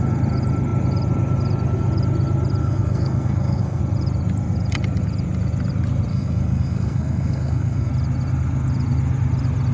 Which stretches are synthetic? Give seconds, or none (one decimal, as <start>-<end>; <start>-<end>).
2.6-3.8; 6.1-7.9